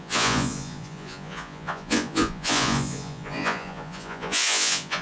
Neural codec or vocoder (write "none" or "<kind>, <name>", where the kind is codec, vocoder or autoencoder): vocoder, Vocos